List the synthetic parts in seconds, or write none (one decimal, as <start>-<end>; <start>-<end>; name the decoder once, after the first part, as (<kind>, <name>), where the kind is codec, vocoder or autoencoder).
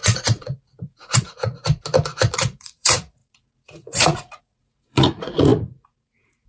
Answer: 0.0-1.6 (vocoder, Vocos); 2.3-6.5